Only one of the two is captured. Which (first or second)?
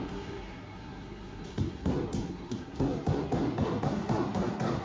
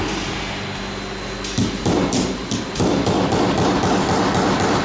second